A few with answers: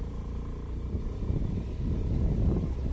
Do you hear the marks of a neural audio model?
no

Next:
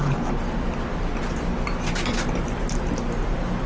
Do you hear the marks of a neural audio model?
no